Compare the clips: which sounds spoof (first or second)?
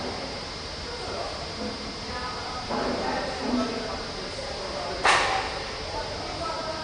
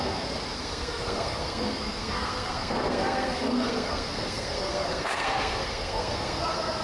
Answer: second